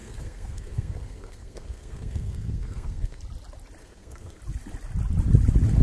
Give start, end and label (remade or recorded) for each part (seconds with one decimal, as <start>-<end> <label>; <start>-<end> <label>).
0.0-3.2 remade; 3.2-3.8 recorded; 3.8-4.4 remade; 4.4-5.8 recorded